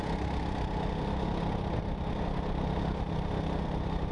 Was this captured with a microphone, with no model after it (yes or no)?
yes